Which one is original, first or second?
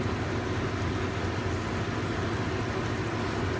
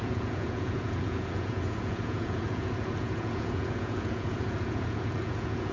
first